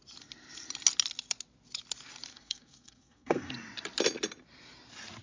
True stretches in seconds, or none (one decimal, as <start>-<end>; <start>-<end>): 0.0-2.3; 3.5-5.2